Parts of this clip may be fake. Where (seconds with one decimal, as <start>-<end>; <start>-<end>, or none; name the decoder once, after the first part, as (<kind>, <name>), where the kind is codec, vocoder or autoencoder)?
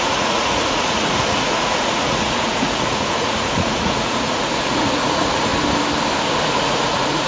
0.0-5.5 (vocoder, Vocos); 6.4-7.3